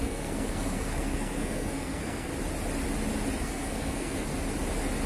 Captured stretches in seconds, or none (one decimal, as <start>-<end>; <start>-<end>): 2.3-3.4; 4.3-5.1

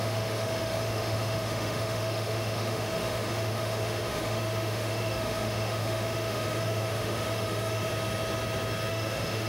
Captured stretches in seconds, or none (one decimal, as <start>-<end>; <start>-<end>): 7.9-8.9